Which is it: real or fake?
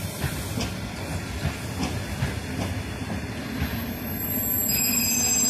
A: real